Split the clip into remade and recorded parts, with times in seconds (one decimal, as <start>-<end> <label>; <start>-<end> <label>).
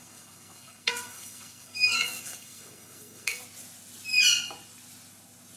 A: 0.0-3.4 remade; 3.4-5.6 recorded